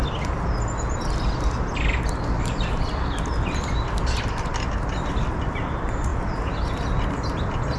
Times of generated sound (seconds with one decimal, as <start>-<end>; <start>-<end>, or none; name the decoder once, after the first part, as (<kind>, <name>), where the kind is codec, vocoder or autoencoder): none